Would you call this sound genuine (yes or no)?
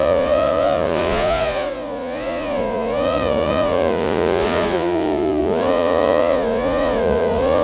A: no